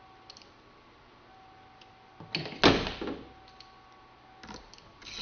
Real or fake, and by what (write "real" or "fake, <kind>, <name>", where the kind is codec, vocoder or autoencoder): real